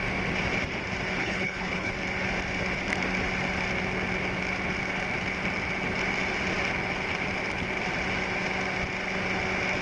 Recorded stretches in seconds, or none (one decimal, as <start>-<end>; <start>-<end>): 0.0-1.2; 1.9-9.8